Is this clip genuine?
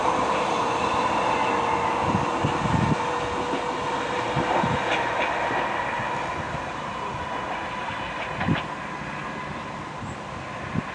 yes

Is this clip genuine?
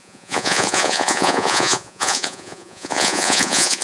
no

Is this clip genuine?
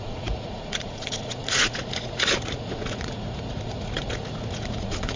no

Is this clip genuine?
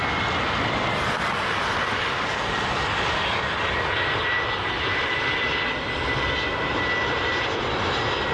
yes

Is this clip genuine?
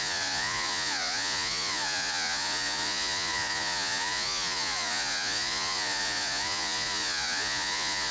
no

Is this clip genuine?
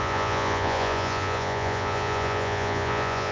no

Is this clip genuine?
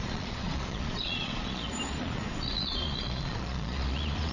no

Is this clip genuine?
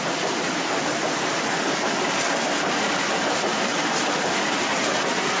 yes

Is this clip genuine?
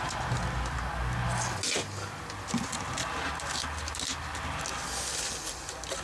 yes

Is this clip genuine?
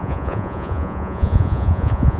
no